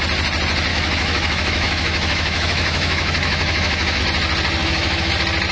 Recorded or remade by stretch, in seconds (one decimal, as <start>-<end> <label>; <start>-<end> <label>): 0.0-0.7 recorded; 0.7-4.0 remade; 4.0-4.6 recorded; 4.6-5.1 remade; 5.1-5.5 recorded